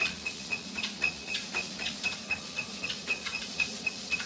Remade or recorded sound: remade